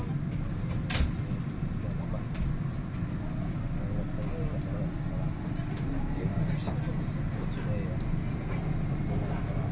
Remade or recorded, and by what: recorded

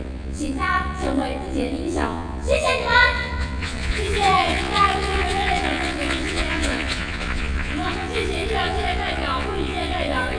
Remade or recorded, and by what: remade, vocoder, Vocos